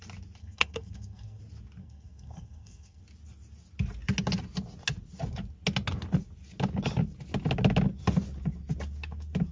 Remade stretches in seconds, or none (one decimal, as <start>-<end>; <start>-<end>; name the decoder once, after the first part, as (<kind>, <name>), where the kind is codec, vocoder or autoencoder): 0.4-1.4 (codec, SNAC); 1.8-3.0

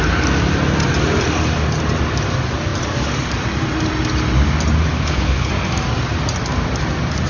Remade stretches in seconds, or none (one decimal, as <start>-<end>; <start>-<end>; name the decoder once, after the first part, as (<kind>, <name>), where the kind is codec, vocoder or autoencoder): 4.9-5.5 (codec, HILCodec)

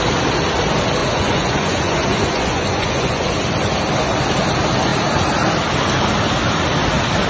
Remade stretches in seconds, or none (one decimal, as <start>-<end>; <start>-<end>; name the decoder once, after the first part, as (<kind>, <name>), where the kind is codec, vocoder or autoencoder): 1.0-3.3 (vocoder, Vocos)

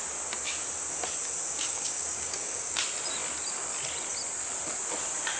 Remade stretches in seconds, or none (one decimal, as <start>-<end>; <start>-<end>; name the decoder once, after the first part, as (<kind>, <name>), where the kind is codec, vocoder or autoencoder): 1.6-2.8 (codec, DAC)